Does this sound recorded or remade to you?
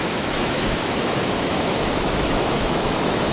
remade